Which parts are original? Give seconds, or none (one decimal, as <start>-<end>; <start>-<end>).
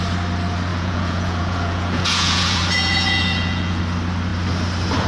0.0-0.7; 3.8-5.1